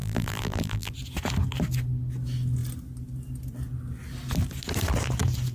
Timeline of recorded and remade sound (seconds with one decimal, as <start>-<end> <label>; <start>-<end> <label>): 0.0-0.9 remade; 0.9-5.5 recorded